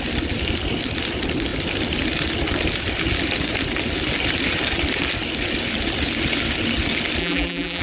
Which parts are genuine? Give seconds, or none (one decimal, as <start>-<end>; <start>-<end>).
0.0-7.2